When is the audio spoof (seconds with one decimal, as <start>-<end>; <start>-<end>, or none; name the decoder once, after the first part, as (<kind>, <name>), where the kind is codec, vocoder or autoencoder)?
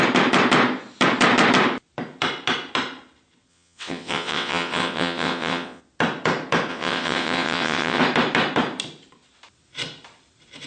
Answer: 3.5-5.8 (vocoder, WaveNeXt); 6.7-8.0